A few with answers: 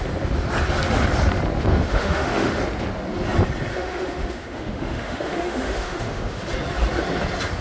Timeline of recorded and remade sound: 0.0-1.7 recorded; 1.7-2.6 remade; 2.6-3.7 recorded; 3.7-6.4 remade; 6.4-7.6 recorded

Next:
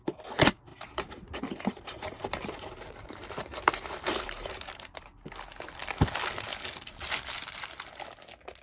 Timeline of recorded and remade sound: 0.0-0.7 recorded; 0.7-5.0 remade; 5.0-8.6 recorded

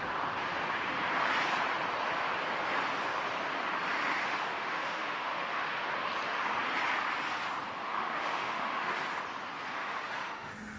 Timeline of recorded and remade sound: 0.0-4.2 recorded; 4.2-5.9 remade; 5.9-7.8 recorded; 7.8-8.9 remade; 8.9-9.7 recorded; 9.7-10.8 remade

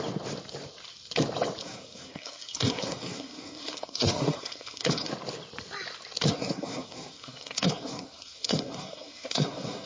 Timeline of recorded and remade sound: 0.0-1.6 recorded; 1.6-5.1 remade; 5.1-6.3 recorded; 6.3-9.9 remade

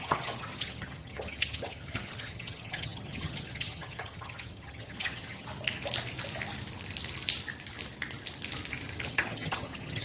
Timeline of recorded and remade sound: 0.0-5.5 remade; 5.5-9.1 recorded; 9.1-10.0 remade

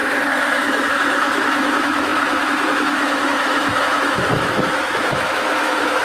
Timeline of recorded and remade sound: 0.0-6.0 remade